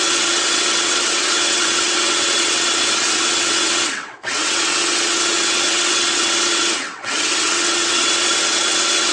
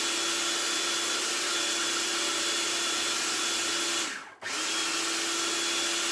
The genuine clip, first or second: second